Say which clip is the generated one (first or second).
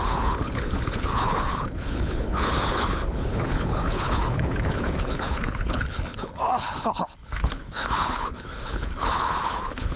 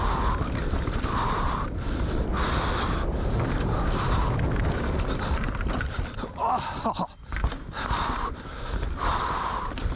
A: first